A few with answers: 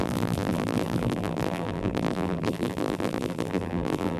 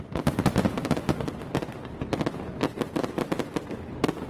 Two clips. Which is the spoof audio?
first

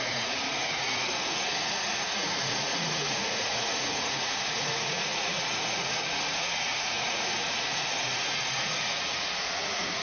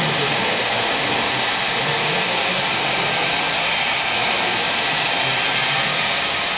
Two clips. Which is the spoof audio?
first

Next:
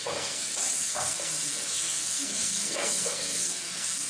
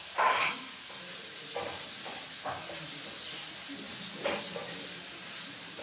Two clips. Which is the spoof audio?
first